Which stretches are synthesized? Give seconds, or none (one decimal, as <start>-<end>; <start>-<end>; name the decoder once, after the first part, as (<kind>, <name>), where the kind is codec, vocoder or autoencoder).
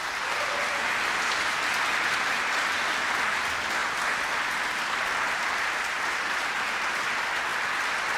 none